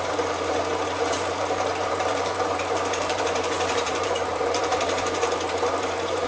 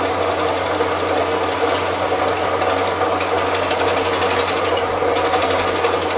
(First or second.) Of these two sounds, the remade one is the first